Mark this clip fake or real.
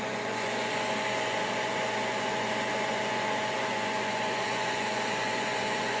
fake